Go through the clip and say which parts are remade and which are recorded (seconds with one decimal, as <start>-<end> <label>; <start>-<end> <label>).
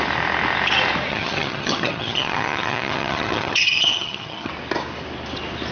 0.0-1.1 recorded; 1.1-4.5 remade; 4.5-5.7 recorded